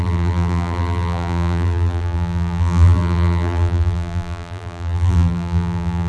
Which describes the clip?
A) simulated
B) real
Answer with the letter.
A